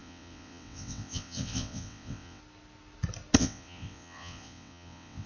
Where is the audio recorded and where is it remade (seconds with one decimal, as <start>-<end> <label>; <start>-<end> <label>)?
0.0-2.4 remade; 2.4-3.4 recorded; 3.4-5.3 remade